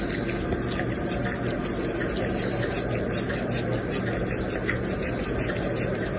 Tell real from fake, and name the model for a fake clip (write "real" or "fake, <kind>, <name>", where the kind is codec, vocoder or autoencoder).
real